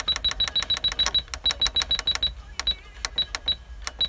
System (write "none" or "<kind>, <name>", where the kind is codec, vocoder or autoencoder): none